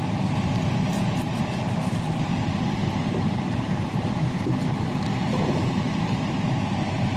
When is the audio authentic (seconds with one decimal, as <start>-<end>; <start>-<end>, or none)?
0.0-0.9; 4.5-5.3